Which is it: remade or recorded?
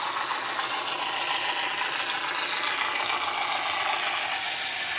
recorded